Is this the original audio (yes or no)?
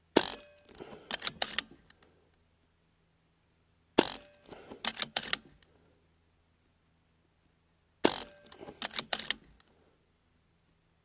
yes